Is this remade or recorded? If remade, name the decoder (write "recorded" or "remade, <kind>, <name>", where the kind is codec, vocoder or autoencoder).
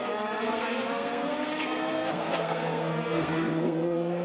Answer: remade, codec, SNAC